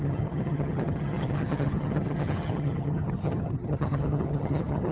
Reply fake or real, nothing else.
fake